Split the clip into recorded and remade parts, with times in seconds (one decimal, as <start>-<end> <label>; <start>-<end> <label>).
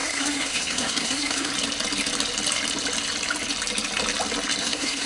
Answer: 0.0-1.5 remade; 1.5-4.6 recorded; 4.6-5.1 remade